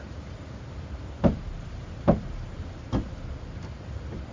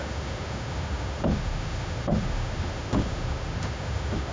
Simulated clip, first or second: second